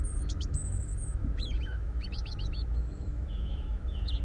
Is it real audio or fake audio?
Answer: fake